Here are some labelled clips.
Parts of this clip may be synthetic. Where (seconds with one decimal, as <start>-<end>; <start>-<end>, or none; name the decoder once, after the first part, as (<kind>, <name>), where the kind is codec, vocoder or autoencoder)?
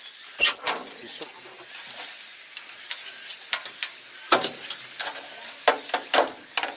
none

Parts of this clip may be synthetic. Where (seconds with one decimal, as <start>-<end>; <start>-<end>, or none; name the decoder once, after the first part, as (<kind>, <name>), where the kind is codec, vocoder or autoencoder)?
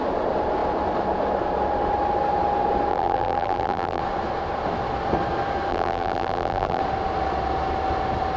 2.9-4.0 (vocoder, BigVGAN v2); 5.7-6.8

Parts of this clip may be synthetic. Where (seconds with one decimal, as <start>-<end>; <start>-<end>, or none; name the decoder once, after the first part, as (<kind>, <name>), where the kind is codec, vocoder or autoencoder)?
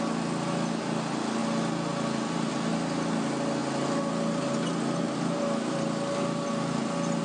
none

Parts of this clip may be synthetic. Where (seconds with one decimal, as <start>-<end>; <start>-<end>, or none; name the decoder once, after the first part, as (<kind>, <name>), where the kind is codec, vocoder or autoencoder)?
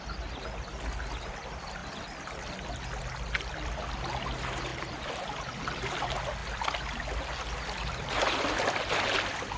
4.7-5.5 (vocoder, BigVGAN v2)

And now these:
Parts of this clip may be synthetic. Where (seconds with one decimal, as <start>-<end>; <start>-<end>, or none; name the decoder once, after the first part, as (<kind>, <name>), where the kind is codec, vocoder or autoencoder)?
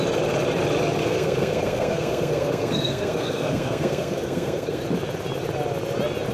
1.0-4.8 (codec, SNAC)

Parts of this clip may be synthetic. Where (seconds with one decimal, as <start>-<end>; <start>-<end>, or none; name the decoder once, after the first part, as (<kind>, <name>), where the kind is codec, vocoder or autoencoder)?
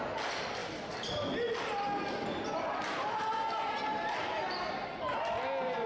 none